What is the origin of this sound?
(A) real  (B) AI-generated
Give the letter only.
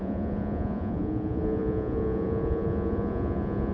B